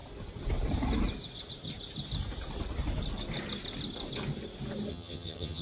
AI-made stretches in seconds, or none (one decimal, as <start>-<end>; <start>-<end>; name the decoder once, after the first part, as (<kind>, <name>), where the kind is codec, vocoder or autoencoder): 4.9-5.6 (vocoder, HiFi-GAN)